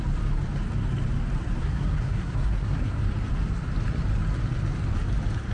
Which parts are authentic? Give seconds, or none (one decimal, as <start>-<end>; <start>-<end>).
0.0-1.6; 3.0-5.5